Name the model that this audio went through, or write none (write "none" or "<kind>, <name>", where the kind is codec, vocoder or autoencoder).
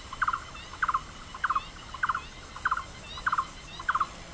none